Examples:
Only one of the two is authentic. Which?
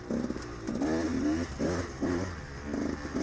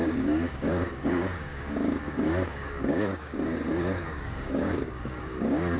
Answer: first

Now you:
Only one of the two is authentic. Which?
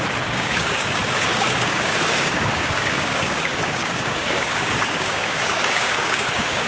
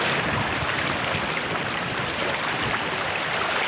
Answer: second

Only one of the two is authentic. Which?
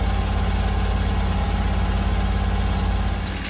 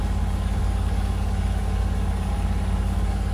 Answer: first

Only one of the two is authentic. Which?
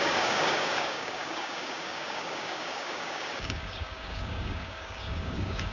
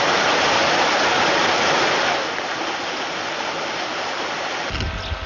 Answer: second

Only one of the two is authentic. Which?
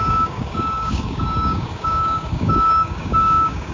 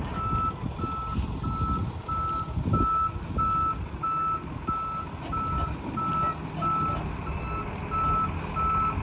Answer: second